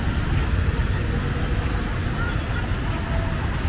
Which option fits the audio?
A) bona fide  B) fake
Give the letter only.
A